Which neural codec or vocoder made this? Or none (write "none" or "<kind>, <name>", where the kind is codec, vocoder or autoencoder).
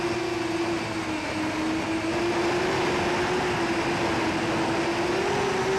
none